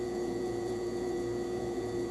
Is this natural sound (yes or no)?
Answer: no